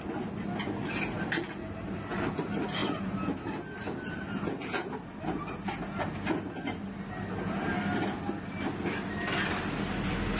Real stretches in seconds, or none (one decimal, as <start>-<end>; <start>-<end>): 0.0-2.8; 5.2-10.4